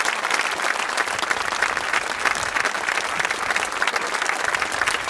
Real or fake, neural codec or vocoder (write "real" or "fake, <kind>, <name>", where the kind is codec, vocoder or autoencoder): real